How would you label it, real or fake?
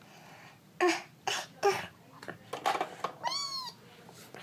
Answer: real